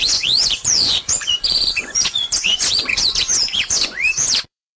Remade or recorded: remade